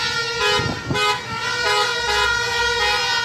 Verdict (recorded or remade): recorded